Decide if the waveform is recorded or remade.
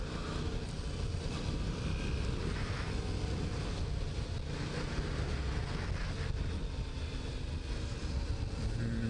recorded